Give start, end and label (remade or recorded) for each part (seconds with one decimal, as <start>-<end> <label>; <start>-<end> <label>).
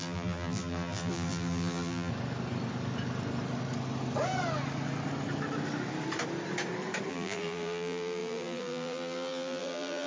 0.0-2.1 remade; 2.1-7.1 recorded; 7.1-10.1 remade